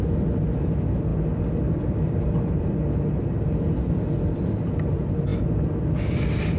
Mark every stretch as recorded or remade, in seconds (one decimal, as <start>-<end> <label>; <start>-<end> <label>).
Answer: 0.0-6.6 recorded